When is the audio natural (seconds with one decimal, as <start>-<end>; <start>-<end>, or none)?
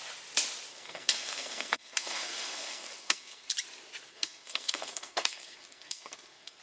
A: 0.0-0.7; 3.5-4.1